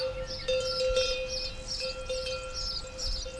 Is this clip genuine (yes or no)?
yes